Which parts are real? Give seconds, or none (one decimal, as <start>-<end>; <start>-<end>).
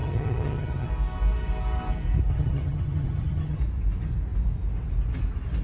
0.9-2.3; 3.6-5.6